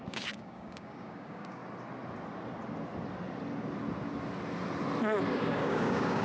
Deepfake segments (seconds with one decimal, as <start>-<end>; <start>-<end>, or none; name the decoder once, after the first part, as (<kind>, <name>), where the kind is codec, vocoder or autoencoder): 0.0-1.6 (codec, DAC); 5.3-6.2